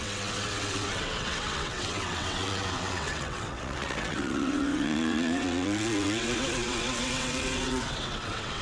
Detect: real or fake fake